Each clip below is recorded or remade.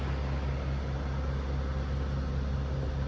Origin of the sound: recorded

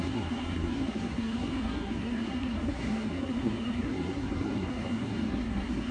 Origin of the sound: remade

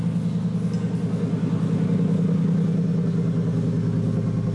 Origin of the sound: recorded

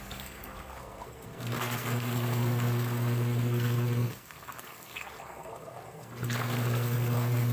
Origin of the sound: remade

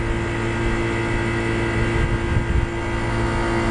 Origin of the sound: recorded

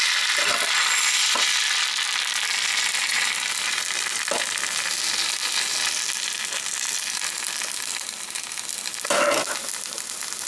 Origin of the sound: recorded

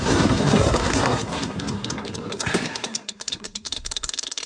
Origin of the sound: remade